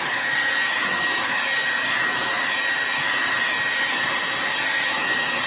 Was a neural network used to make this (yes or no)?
no